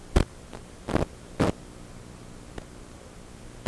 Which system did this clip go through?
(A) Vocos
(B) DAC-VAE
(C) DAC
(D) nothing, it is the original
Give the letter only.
D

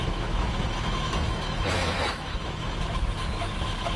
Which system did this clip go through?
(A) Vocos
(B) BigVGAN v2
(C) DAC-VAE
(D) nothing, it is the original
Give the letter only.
C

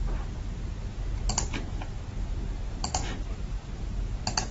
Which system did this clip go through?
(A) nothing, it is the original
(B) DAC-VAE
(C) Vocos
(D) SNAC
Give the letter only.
A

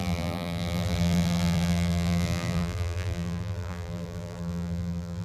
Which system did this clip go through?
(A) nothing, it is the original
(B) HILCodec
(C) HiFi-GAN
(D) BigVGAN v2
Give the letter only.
D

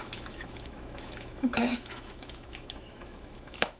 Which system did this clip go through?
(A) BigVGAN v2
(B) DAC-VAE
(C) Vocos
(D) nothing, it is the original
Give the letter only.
B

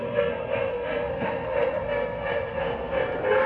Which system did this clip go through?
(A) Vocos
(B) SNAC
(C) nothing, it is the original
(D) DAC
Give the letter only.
B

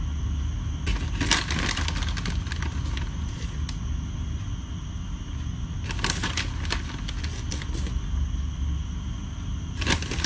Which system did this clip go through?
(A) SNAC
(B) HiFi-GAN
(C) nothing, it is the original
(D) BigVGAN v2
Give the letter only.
C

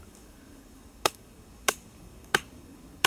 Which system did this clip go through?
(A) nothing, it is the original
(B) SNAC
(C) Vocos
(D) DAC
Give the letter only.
D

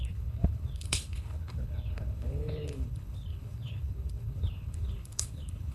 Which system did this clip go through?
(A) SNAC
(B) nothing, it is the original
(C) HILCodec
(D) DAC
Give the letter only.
C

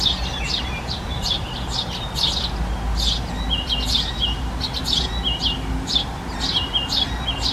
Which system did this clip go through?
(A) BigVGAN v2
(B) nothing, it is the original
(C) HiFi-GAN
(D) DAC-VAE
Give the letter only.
B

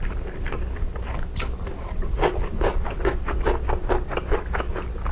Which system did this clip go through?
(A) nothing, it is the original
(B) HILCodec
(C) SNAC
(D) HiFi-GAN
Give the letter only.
A